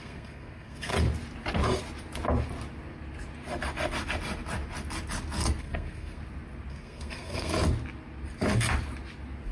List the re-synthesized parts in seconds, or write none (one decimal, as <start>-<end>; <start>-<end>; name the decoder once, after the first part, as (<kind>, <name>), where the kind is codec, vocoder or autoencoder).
0.0-0.9 (codec, SNAC); 5.6-6.2; 6.7-7.5